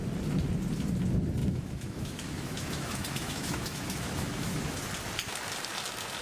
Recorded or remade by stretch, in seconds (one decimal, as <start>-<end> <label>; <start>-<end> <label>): 0.0-1.4 recorded; 1.4-4.9 remade; 4.9-6.2 recorded